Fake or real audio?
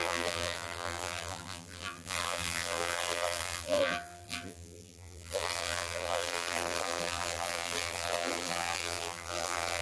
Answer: fake